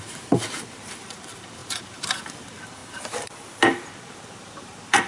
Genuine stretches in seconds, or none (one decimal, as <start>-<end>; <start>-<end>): none